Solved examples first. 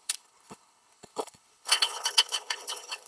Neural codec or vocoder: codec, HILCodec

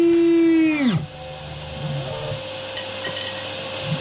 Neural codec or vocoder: none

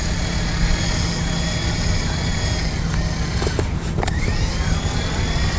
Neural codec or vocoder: none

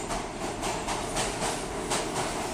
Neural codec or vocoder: none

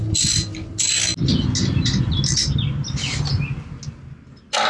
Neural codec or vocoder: none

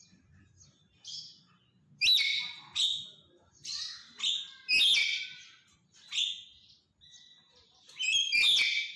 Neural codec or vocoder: none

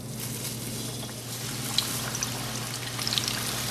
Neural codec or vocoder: none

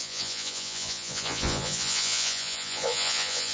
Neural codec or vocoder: vocoder, Vocos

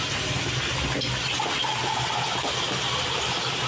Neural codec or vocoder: none